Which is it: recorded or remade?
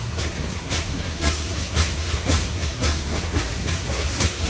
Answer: remade